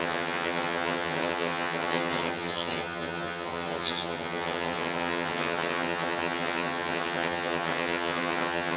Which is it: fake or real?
fake